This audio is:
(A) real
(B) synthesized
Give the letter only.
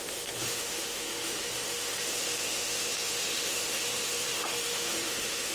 B